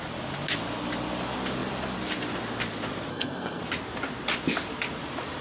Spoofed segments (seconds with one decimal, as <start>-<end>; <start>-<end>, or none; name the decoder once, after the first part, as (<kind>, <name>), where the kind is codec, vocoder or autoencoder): 3.1-3.6 (codec, SNAC)